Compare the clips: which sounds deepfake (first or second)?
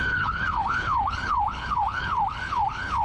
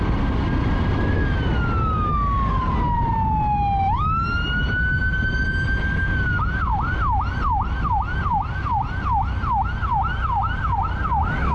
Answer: first